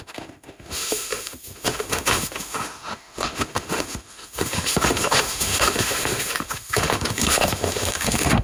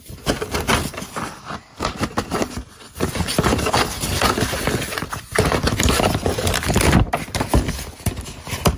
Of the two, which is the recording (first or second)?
second